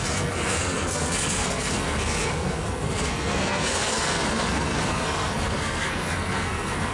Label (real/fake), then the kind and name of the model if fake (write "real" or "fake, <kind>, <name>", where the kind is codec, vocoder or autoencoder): fake, codec, SNAC